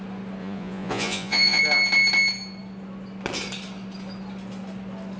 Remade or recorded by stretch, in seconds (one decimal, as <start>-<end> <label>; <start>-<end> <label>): 0.0-0.4 recorded; 0.4-1.6 remade; 1.6-5.2 recorded

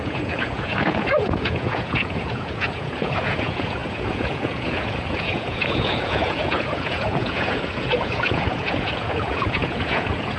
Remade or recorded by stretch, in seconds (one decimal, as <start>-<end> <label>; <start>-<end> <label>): 0.0-10.4 remade

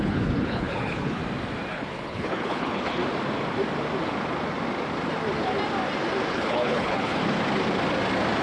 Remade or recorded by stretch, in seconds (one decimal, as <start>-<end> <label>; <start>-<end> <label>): 0.0-1.2 remade; 1.2-1.7 recorded; 1.7-3.0 remade; 3.0-6.3 recorded; 6.3-7.2 remade; 7.2-8.4 recorded

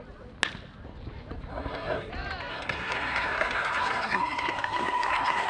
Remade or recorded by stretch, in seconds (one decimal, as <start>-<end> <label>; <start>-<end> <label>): 0.0-1.5 recorded; 1.5-2.1 remade; 2.1-2.5 recorded; 2.5-5.5 remade

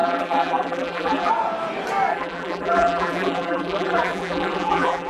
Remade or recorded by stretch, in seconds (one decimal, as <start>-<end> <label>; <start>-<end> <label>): 0.0-1.3 remade; 1.3-2.1 recorded; 2.1-5.1 remade

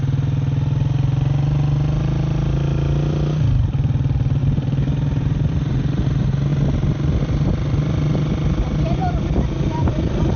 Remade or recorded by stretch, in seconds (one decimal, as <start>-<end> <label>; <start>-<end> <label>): 0.0-4.4 recorded; 4.4-5.5 remade; 5.5-9.0 recorded; 9.0-9.9 remade; 9.9-10.4 recorded

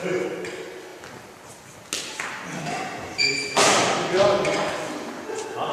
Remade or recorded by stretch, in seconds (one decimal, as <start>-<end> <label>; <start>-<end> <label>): 0.0-5.7 recorded

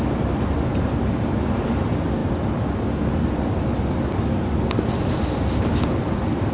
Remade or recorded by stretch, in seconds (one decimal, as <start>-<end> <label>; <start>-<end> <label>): 0.0-6.5 recorded